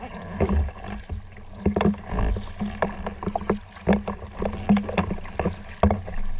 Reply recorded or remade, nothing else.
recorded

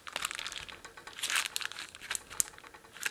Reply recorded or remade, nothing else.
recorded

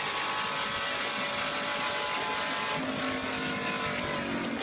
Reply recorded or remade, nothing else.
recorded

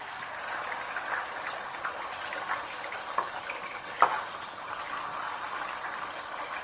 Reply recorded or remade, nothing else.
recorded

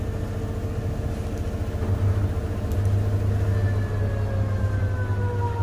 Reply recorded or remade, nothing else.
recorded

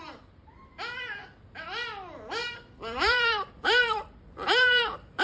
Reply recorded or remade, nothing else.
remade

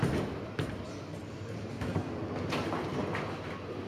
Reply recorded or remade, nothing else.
recorded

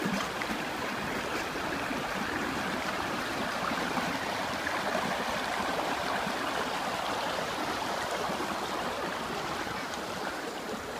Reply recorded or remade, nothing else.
remade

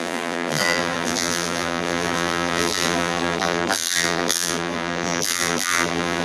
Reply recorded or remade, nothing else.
remade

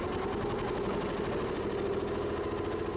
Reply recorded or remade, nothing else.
recorded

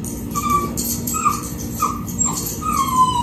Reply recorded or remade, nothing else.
remade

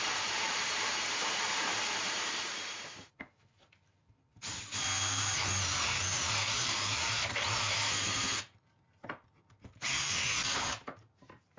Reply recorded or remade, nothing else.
remade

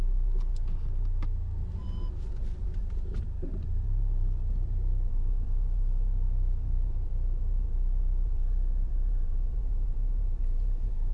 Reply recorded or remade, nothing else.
remade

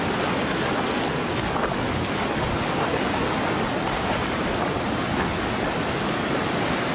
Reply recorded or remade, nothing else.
recorded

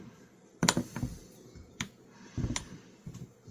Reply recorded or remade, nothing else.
remade